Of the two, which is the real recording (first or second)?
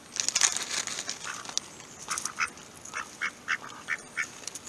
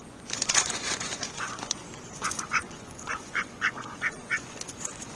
first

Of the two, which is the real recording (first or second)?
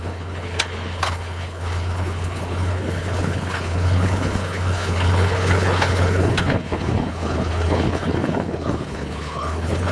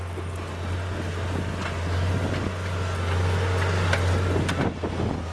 second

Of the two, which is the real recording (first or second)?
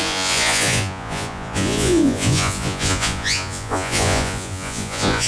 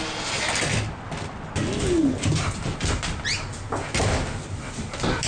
second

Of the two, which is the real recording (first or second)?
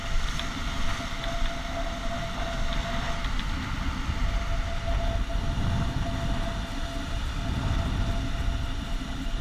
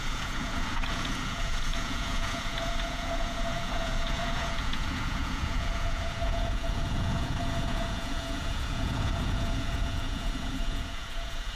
first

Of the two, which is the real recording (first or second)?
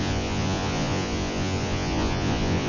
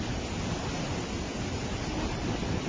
second